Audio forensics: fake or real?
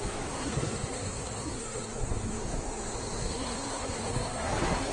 fake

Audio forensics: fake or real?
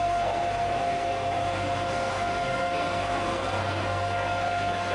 fake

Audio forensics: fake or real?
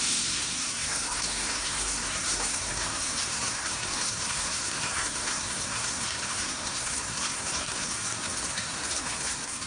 fake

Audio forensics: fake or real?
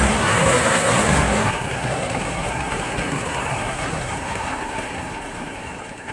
fake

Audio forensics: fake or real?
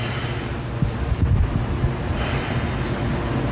real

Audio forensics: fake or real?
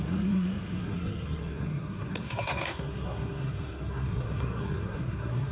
fake